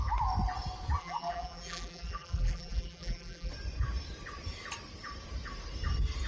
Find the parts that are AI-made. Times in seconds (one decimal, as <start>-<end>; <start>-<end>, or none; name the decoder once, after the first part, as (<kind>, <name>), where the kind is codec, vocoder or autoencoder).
1.0-3.5 (vocoder, BigVGAN v2)